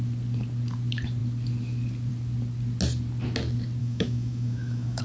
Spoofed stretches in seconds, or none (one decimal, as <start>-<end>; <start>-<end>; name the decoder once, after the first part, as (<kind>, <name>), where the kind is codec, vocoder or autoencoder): 3.8-5.0 (autoencoder, DAC-VAE)